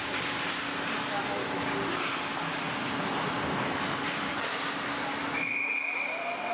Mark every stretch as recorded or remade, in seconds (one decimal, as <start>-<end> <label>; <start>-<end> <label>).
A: 0.0-6.5 recorded